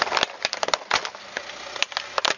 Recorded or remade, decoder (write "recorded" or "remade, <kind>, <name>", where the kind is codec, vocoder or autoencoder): recorded